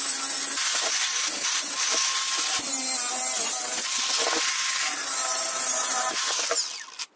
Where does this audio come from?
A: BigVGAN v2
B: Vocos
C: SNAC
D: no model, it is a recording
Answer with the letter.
D